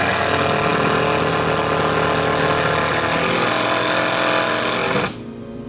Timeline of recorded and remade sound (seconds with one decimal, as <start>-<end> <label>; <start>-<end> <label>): 0.0-5.7 recorded